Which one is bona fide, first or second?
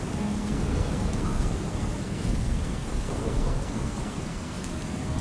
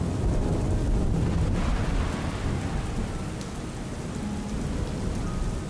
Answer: second